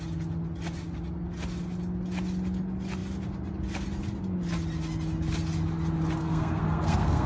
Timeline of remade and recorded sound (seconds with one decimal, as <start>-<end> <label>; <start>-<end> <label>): 0.0-6.2 recorded; 6.2-7.3 remade